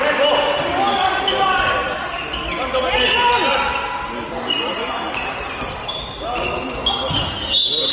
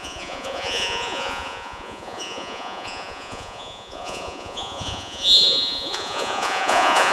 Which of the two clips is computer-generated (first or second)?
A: second